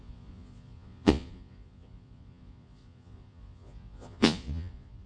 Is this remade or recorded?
remade